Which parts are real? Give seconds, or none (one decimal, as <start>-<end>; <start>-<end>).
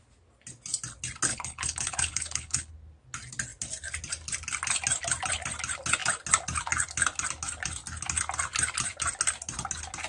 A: 0.0-1.3; 2.7-10.1